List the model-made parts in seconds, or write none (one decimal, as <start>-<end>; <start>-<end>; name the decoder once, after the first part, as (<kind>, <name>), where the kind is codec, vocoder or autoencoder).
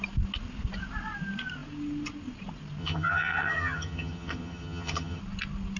2.8-5.2 (vocoder, HiFi-GAN)